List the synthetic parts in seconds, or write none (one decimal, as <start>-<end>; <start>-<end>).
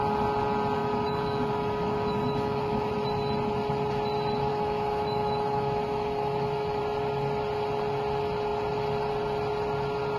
0.8-2.9; 4.5-6.8